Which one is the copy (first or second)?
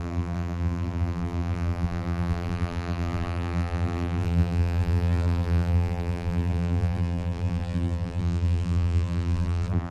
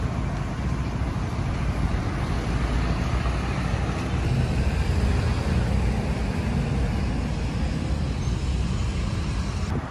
first